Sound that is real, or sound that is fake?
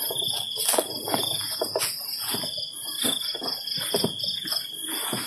fake